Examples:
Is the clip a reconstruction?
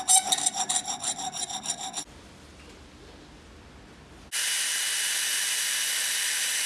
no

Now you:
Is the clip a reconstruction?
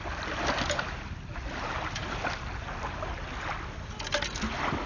no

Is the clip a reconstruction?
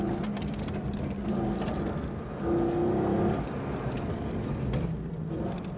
no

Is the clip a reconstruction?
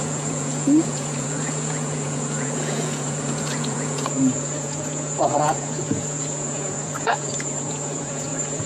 yes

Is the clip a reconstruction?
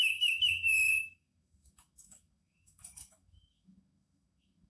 yes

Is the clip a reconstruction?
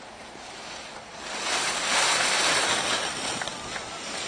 no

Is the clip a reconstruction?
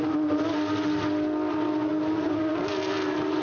no